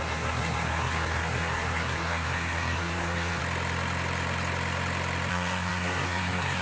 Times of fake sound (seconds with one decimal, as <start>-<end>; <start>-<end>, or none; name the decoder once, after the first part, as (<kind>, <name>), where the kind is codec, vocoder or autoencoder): 0.0-3.4 (codec, SNAC); 5.3-6.6